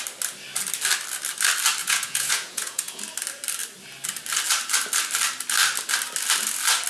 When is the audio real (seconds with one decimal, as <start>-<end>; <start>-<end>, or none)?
0.0-1.8; 3.0-6.9